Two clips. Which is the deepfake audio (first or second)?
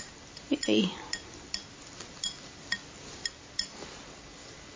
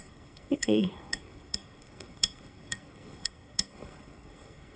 second